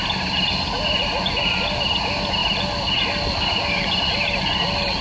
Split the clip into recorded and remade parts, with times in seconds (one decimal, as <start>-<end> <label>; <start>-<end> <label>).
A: 0.0-5.0 recorded